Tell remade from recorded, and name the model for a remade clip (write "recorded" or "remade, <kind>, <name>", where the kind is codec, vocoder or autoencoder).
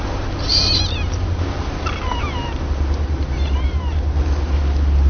remade, vocoder, BigVGAN v2